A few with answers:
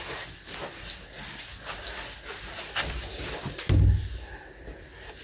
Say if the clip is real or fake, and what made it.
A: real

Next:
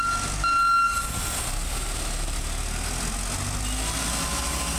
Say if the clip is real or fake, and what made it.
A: real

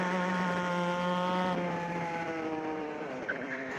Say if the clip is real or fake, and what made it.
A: fake, vocoder, BigVGAN v2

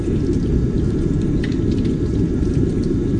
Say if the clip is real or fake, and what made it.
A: fake, vocoder, BigVGAN v2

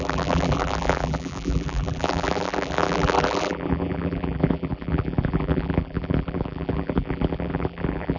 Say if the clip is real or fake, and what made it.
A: fake, vocoder, BigVGAN v2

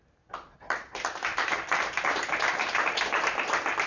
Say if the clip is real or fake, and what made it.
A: fake, vocoder, BigVGAN v2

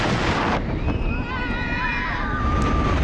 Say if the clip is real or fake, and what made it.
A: real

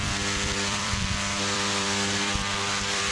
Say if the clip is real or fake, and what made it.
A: fake, vocoder, BigVGAN v2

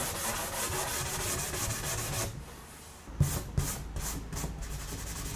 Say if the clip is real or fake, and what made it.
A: real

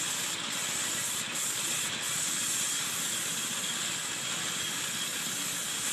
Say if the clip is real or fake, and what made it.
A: real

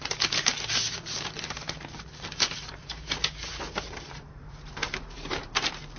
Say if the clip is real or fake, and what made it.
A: fake, vocoder, BigVGAN v2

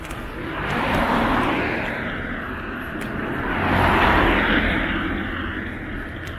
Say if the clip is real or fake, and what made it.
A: real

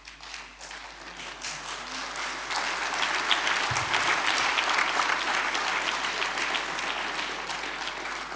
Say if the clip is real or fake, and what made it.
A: real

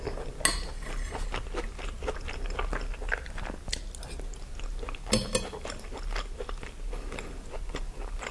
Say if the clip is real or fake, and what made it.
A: real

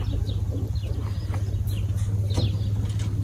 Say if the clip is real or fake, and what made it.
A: real